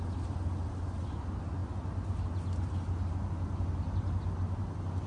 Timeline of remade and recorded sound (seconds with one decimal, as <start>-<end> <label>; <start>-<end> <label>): 0.0-5.1 recorded